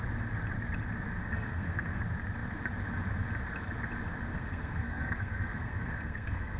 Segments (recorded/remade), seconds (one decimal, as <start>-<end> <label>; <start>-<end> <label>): 0.0-1.2 recorded; 1.2-2.0 remade; 2.0-4.3 recorded; 4.3-6.6 remade